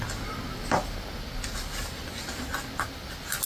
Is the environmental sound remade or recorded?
recorded